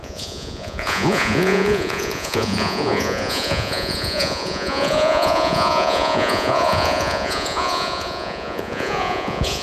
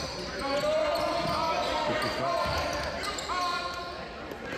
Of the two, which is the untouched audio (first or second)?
second